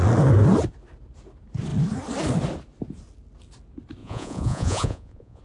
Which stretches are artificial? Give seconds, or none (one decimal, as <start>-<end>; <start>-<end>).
4.0-5.4